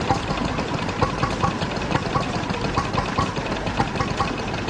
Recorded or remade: recorded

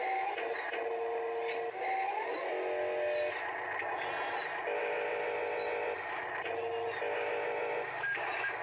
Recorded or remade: recorded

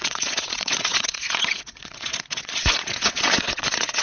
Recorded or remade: remade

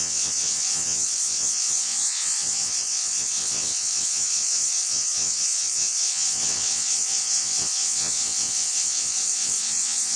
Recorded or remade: remade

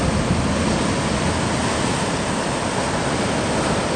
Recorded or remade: recorded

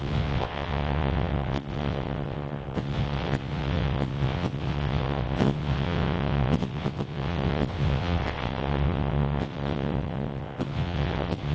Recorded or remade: remade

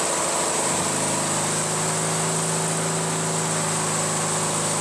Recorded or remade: recorded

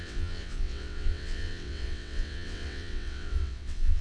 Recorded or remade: remade